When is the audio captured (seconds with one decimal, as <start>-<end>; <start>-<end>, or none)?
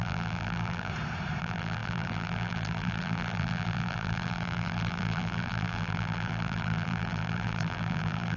0.9-1.4